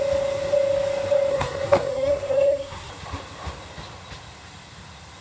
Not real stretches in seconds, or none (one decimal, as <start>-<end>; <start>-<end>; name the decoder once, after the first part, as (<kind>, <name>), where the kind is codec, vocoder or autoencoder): 1.3-2.9 (codec, SNAC)